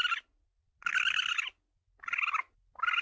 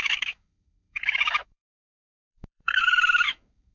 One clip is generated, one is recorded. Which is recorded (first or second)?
first